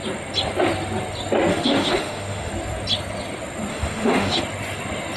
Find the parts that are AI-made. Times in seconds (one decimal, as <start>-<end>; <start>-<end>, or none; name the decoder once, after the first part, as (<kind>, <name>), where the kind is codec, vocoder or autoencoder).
1.5-2.5 (autoencoder, DAC-VAE); 3.7-4.4